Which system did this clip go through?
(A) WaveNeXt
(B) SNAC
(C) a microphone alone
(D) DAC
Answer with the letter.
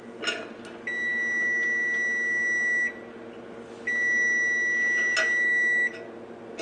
C